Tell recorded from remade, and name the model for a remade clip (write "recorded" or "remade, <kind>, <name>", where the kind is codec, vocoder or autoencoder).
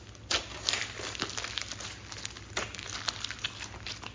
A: recorded